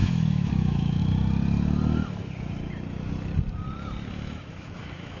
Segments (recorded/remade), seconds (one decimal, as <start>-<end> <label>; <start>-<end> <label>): 0.0-1.0 remade; 1.0-4.1 recorded; 4.1-5.2 remade